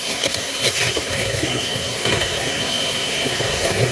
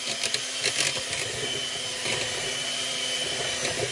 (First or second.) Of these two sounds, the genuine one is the second